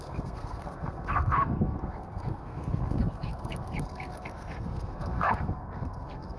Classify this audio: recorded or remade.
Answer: remade